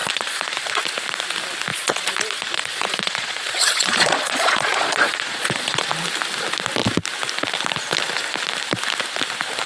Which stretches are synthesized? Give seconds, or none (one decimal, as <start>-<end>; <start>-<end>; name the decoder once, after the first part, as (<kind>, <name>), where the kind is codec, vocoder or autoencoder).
0.0-0.8 (vocoder, Vocos); 1.7-5.9